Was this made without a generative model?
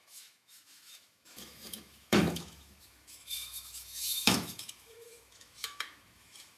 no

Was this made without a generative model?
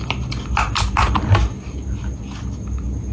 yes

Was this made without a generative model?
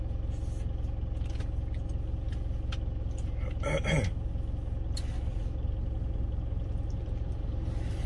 yes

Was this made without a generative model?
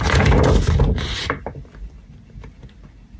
yes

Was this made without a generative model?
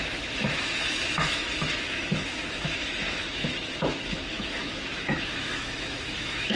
no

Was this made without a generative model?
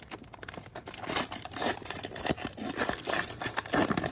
yes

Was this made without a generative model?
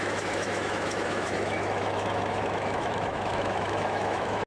no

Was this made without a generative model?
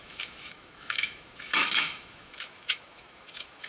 no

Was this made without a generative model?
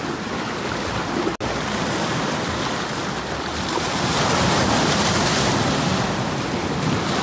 yes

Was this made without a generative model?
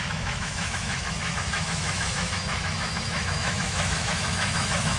no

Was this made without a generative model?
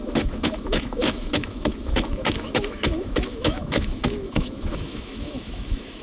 no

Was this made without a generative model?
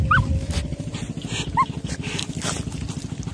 yes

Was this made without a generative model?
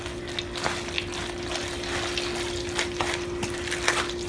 yes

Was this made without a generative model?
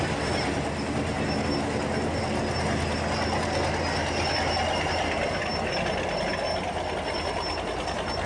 yes